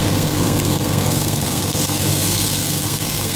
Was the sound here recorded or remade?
remade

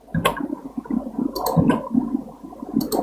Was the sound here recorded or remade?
recorded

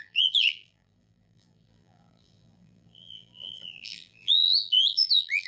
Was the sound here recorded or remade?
remade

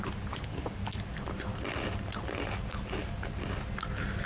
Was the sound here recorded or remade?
recorded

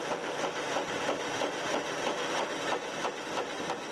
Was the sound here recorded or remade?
recorded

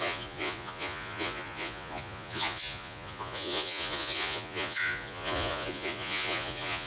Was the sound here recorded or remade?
remade